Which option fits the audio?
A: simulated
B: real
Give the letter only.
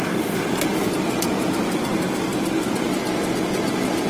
B